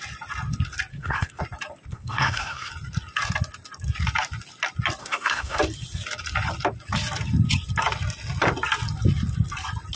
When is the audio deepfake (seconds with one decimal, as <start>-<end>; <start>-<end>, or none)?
0.9-1.4; 1.9-2.7; 5.0-5.6